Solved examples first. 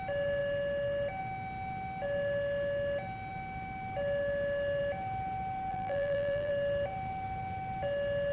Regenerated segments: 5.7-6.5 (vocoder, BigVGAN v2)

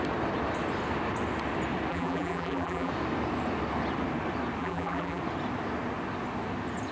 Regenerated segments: 1.9-2.9 (vocoder, BigVGAN v2); 4.6-5.2

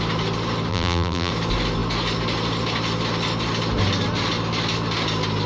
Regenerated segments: 0.7-1.3 (vocoder, BigVGAN v2)

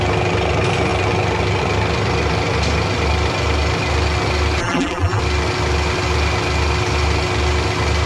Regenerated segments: 4.6-5.2 (vocoder, BigVGAN v2)